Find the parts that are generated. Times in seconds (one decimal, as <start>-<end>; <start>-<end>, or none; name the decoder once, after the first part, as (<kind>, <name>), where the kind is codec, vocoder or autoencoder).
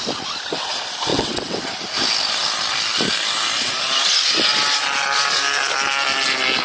1.1-1.6 (vocoder, WaveNeXt)